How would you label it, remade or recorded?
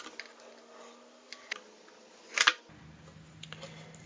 recorded